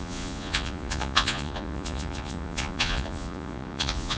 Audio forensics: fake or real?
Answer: fake